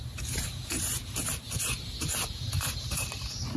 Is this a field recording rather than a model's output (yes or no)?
no